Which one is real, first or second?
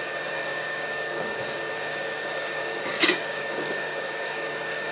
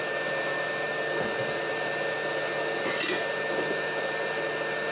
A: second